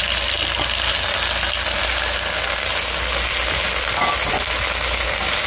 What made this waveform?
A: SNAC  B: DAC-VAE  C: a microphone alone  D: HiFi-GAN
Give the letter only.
C